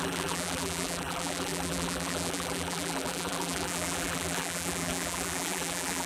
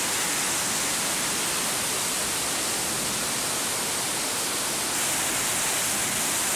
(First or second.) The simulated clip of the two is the first